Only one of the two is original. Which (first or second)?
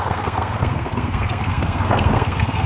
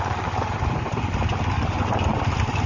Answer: second